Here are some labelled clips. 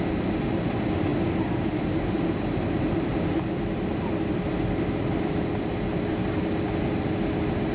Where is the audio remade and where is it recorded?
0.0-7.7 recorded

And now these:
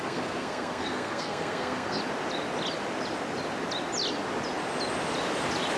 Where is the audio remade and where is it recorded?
0.0-2.0 remade; 2.0-5.8 recorded

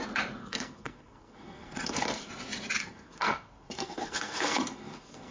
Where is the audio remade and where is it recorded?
0.0-0.4 recorded; 0.4-2.3 remade; 2.3-2.8 recorded; 2.8-5.3 remade

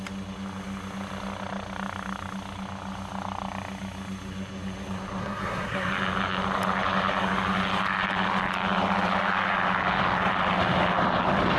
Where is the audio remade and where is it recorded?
0.0-5.2 recorded; 5.2-5.9 remade; 5.9-11.6 recorded

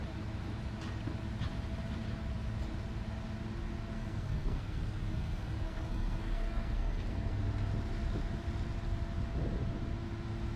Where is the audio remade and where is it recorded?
0.0-3.9 recorded; 3.9-7.4 remade; 7.4-10.6 recorded

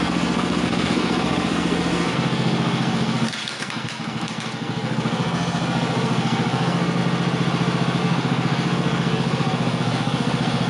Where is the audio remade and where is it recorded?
0.0-7.0 remade; 7.0-8.0 recorded; 8.0-10.7 remade